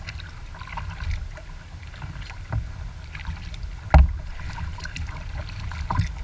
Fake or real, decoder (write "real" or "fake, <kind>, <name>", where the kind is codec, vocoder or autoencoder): real